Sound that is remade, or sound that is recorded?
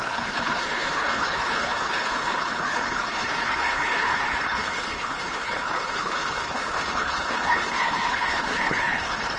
remade